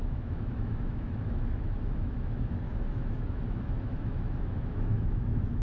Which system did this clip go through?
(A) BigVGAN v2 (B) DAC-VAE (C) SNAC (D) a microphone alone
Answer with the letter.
B